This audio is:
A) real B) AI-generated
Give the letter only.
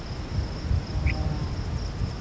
A